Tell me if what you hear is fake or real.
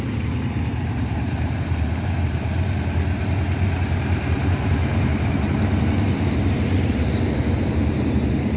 fake